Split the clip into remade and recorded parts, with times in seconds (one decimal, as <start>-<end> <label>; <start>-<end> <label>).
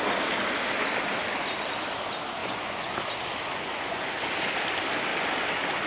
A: 0.0-2.4 recorded; 2.4-3.0 remade; 3.0-3.5 recorded; 3.5-4.1 remade; 4.1-5.9 recorded